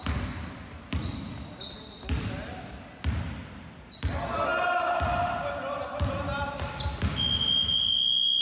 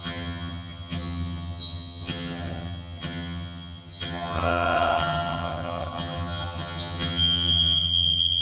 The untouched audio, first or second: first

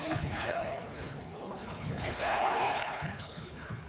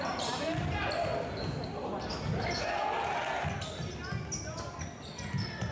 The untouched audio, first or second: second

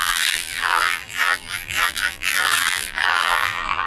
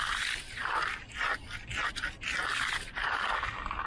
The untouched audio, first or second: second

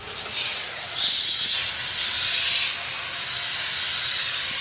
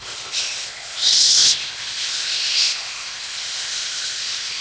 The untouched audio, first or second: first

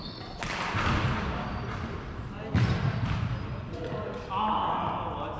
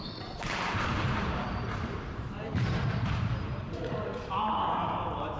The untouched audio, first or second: first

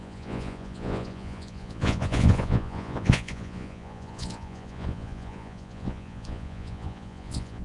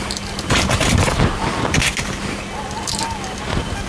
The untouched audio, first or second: second